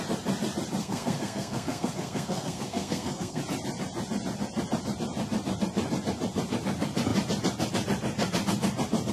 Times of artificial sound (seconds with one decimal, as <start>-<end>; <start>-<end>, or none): 0.8-3.4